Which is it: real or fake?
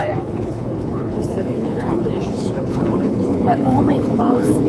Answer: fake